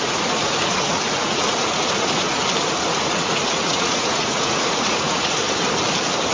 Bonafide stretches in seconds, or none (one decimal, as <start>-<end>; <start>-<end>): 2.3-3.0; 5.4-6.3